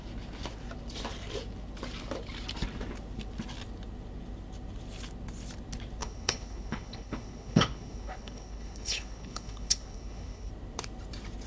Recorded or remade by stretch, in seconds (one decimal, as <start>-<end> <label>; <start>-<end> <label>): 0.0-6.0 recorded; 6.0-10.5 remade; 10.5-11.5 recorded